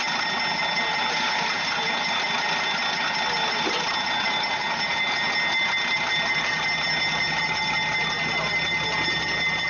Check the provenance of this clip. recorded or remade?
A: recorded